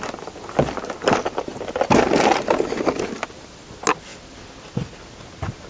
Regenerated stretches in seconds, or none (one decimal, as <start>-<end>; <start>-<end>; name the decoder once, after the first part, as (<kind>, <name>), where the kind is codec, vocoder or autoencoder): none